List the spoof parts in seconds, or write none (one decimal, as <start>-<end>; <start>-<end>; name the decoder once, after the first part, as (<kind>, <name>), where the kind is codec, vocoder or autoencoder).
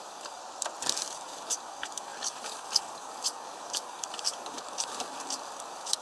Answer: 0.0-0.4 (codec, DAC); 0.9-6.0